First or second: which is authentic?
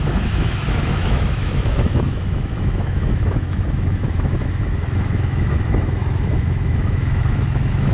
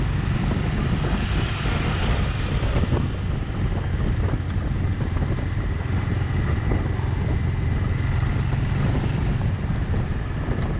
second